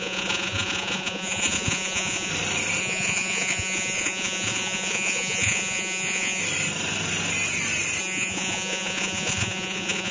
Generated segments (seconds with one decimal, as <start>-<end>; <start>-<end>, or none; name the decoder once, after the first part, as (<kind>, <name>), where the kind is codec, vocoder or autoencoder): 0.0-2.3 (vocoder, Vocos); 2.8-6.4; 8.0-10.1